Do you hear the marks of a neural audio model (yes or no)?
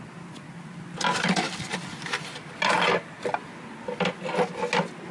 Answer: no